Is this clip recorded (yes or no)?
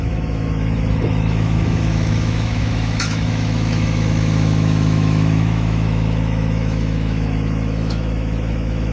no